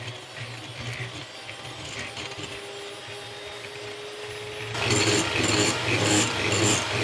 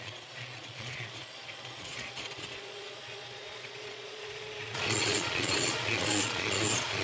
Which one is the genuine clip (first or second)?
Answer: first